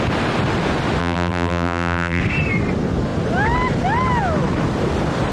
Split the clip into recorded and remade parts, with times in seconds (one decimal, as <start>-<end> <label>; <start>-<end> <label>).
0.0-1.0 recorded; 1.0-2.2 remade; 2.2-5.3 recorded